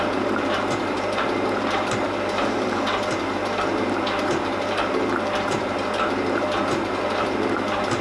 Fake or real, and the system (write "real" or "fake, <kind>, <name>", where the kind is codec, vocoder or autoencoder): fake, vocoder, BigVGAN v2